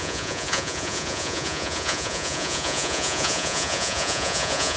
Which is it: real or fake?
fake